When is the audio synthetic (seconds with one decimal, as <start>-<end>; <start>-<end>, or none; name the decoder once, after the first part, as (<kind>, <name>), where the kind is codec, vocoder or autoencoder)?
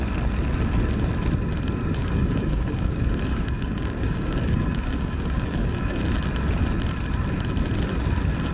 2.0-6.0 (codec, DAC)